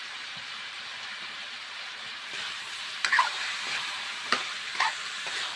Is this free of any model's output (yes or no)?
no